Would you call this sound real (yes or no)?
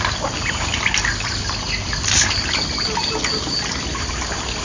yes